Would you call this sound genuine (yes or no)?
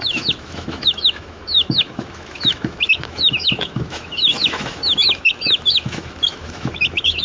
no